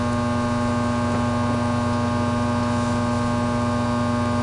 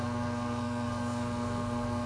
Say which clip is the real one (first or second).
first